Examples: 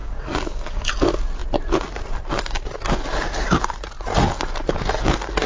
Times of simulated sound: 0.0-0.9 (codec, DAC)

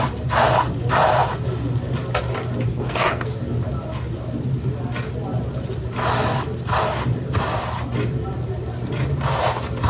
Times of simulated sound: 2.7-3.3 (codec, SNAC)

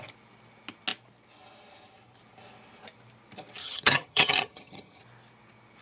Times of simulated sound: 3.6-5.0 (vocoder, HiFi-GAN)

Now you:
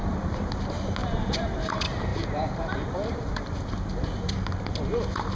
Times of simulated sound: 0.0-0.5 (vocoder, BigVGAN v2); 1.0-1.7; 2.1-5.3

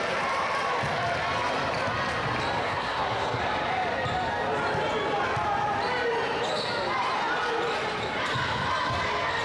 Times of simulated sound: 2.6-3.4 (codec, SNAC)

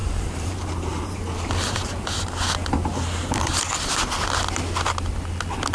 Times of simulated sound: 0.0-1.2 (vocoder, BigVGAN v2)